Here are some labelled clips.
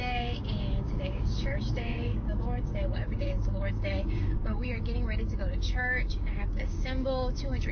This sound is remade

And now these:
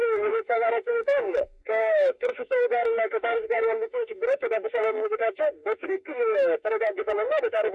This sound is remade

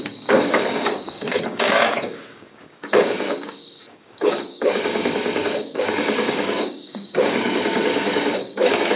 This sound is remade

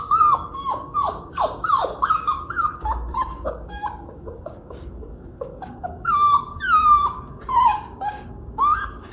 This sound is remade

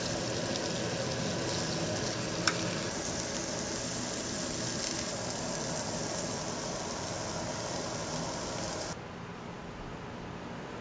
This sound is recorded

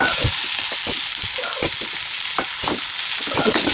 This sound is recorded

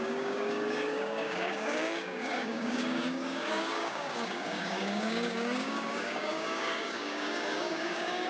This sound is remade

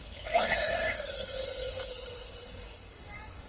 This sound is remade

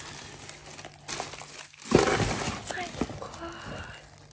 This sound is recorded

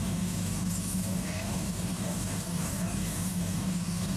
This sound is remade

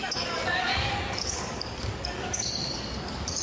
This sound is remade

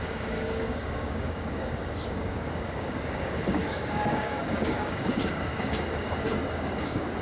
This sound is remade